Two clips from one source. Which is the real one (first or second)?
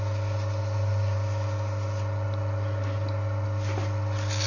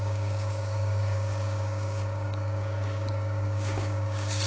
first